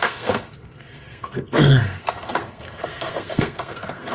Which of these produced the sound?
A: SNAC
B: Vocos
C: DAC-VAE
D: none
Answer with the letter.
A